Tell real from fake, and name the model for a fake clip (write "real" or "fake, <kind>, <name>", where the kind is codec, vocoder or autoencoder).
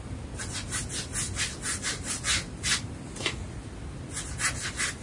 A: real